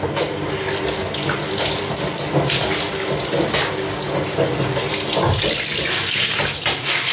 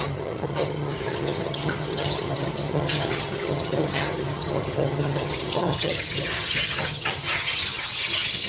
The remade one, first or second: second